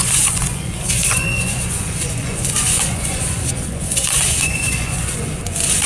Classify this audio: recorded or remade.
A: remade